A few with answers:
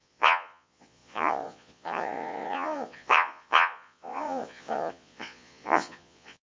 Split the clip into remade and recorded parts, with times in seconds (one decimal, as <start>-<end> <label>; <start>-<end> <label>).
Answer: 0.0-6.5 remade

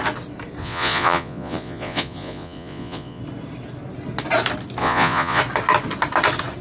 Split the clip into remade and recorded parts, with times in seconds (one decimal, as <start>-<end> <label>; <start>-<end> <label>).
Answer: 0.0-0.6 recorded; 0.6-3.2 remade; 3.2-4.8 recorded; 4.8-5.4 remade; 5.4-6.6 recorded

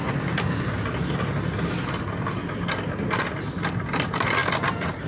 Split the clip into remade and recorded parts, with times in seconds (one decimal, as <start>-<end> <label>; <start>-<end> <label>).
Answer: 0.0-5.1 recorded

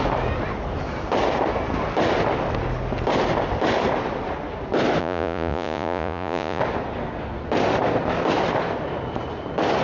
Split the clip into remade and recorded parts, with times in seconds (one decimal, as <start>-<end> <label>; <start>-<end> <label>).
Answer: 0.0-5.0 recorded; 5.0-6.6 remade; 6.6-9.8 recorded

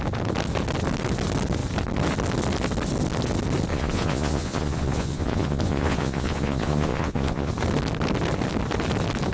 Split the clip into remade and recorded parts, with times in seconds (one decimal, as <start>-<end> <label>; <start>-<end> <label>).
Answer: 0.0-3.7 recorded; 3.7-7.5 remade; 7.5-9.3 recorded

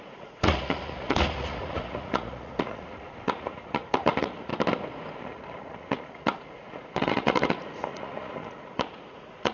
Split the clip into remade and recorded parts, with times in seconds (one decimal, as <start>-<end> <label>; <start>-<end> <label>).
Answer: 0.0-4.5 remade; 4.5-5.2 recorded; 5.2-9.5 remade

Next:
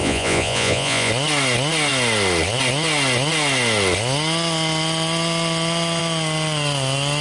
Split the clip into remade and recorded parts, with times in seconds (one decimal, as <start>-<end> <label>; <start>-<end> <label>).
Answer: 0.0-1.1 remade; 1.1-7.2 recorded